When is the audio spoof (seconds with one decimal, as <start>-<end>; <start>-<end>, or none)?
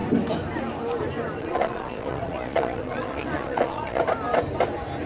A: 1.4-4.0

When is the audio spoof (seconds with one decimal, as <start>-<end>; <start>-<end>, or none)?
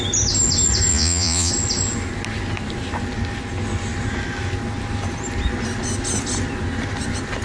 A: 0.9-1.5